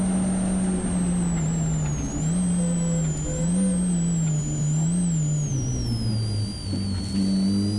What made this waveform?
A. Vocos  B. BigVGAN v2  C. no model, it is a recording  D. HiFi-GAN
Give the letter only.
C